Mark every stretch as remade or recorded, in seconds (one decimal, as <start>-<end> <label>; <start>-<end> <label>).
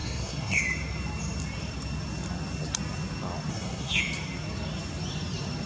0.0-0.6 remade; 0.6-3.5 recorded; 3.5-4.0 remade; 4.0-5.7 recorded